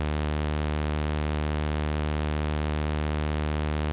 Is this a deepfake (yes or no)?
no